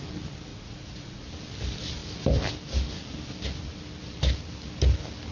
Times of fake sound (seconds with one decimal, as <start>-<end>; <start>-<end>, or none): 0.5-1.3